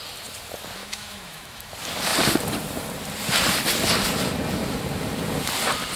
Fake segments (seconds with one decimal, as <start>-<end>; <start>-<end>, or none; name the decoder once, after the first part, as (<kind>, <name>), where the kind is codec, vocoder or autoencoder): 0.8-1.7 (autoencoder, DAC-VAE)